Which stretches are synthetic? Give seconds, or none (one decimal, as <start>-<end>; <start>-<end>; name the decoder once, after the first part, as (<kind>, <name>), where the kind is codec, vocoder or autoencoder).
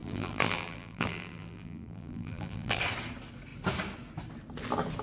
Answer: 0.0-2.8 (vocoder, BigVGAN v2)